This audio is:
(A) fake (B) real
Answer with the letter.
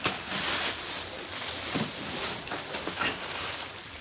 A